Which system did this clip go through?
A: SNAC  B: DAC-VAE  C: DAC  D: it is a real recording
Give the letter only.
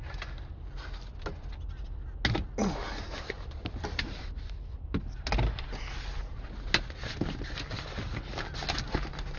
D